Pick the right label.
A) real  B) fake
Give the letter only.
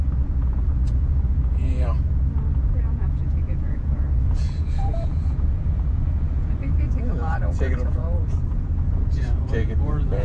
B